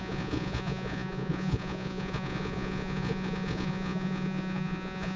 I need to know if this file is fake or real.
fake